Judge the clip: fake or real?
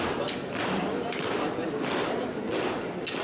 real